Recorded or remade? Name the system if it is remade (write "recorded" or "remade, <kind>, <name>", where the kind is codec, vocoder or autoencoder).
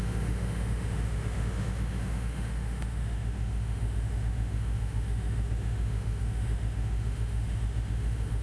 remade, autoencoder, DAC-VAE